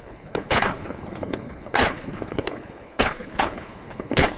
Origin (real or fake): fake